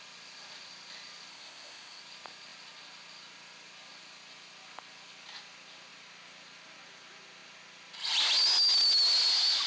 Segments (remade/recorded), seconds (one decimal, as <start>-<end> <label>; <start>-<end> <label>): 0.0-1.3 recorded; 1.3-2.0 remade; 2.0-9.7 recorded